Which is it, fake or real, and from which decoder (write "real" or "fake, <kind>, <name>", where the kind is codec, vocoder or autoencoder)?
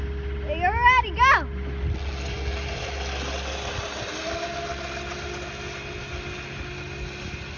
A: real